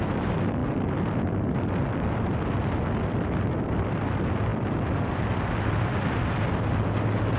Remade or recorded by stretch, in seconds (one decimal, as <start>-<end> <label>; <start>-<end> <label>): 0.0-0.6 remade; 0.6-1.2 recorded; 1.2-7.4 remade